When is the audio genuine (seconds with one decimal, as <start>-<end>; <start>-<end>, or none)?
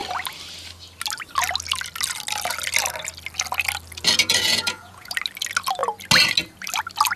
0.0-4.2; 5.1-7.2